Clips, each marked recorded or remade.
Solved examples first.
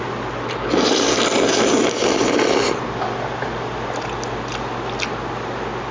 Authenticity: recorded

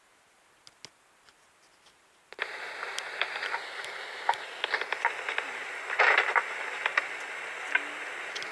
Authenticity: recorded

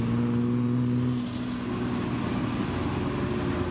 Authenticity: recorded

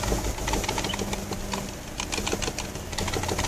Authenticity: recorded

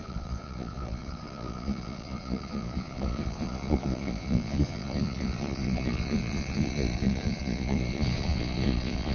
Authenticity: remade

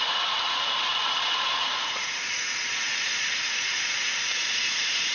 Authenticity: remade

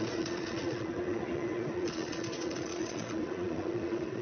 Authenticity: remade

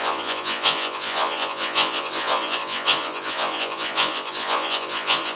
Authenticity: remade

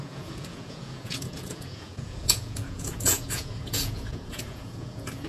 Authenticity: remade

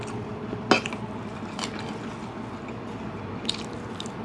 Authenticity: recorded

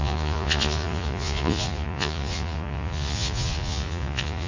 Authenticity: remade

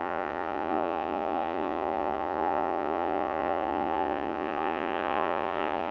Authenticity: remade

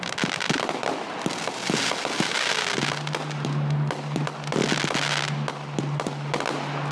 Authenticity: recorded